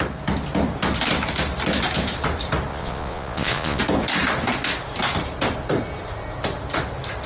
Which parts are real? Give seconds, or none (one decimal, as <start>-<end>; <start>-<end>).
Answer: 0.0-2.7; 3.8-7.3